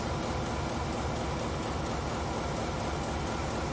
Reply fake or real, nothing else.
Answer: real